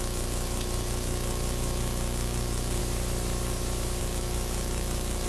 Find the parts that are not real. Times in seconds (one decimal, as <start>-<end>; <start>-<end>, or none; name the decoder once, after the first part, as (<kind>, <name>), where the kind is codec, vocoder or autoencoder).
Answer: 0.0-2.8 (autoencoder, DAC-VAE); 4.0-5.3